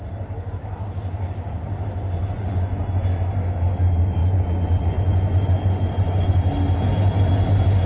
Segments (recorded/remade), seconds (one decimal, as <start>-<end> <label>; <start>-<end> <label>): 0.0-2.2 recorded; 2.2-2.9 remade; 2.9-4.2 recorded; 4.2-6.3 remade; 6.3-7.9 recorded